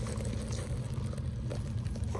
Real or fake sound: real